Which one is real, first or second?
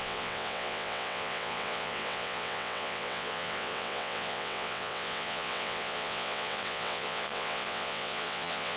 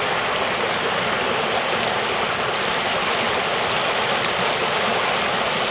second